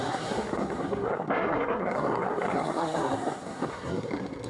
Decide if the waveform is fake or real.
fake